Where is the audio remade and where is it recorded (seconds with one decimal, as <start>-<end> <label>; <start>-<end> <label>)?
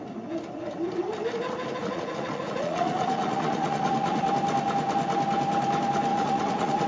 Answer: 0.0-1.8 recorded; 1.8-4.3 remade; 4.3-6.1 recorded; 6.1-6.9 remade